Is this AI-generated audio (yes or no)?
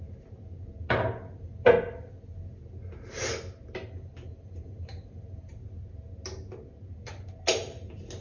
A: no